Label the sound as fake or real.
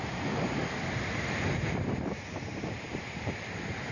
fake